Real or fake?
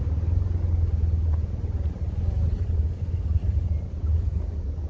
real